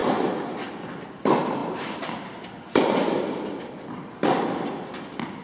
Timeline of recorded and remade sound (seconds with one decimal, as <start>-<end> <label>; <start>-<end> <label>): 0.0-1.6 recorded; 1.6-3.7 remade; 3.7-5.4 recorded